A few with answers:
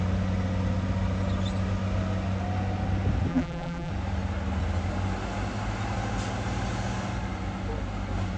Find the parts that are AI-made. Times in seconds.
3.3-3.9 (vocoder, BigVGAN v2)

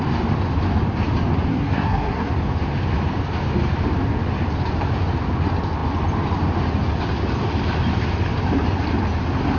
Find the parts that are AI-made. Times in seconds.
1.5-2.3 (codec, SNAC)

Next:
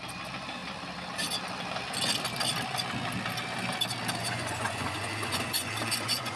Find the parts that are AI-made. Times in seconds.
4.2-6.4 (vocoder, Vocos)

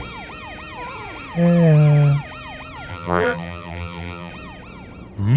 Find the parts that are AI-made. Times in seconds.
2.9-4.3 (vocoder, BigVGAN v2)

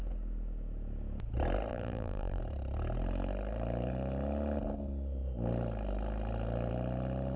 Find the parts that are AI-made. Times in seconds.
1.7-2.4 (vocoder, BigVGAN v2)